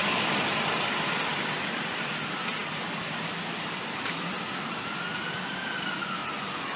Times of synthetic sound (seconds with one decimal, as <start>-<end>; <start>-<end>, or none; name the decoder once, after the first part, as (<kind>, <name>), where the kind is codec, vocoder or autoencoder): none